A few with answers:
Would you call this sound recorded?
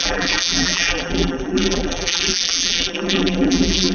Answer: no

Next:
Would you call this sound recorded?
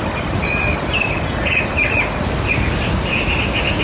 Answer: yes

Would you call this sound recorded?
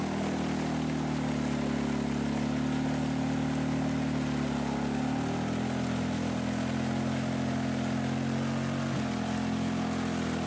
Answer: yes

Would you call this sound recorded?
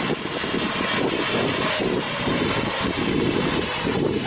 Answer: yes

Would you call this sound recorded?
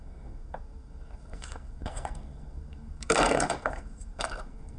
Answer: no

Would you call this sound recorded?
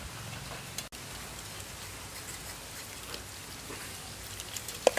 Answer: yes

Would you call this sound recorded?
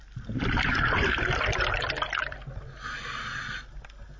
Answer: yes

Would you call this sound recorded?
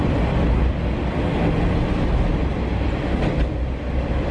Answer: yes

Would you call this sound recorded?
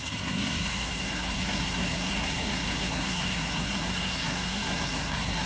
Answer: no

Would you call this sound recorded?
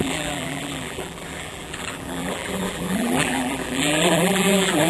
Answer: no